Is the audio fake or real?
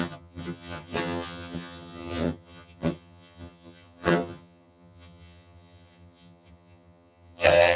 fake